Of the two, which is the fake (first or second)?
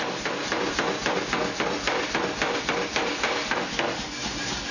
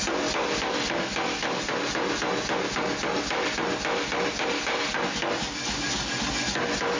first